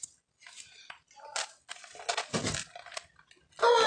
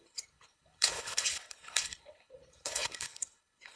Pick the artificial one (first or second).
second